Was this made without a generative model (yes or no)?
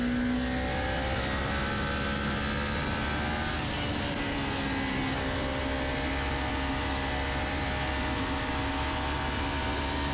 yes